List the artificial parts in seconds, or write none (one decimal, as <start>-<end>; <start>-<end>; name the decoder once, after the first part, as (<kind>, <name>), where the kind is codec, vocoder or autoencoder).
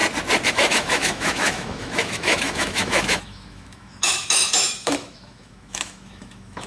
0.5-6.7 (autoencoder, DAC-VAE)